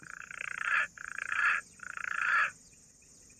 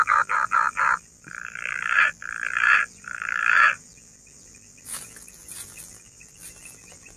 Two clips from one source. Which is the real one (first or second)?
first